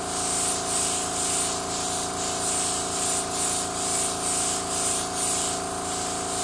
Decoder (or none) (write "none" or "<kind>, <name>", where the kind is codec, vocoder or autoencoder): none